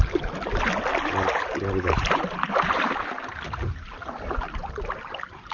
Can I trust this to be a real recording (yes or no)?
yes